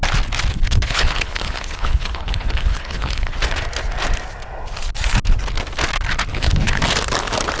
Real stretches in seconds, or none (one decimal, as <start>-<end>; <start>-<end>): 0.0-0.5; 3.4-6.3; 6.8-7.6